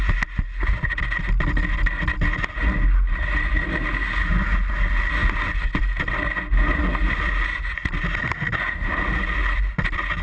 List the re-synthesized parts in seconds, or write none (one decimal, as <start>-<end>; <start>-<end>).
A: none